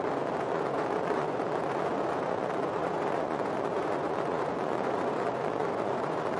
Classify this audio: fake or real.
fake